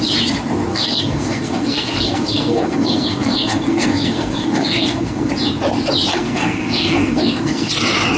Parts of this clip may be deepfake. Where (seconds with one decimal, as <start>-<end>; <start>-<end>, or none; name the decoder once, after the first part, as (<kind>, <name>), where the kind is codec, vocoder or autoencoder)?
0.7-5.3 (codec, SNAC); 6.1-7.7